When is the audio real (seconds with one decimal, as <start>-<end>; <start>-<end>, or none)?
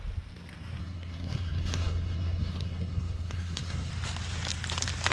0.0-0.8; 3.9-5.1